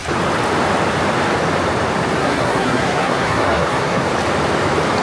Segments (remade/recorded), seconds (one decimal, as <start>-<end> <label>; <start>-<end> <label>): 0.0-2.2 recorded; 2.2-4.1 remade; 4.1-5.0 recorded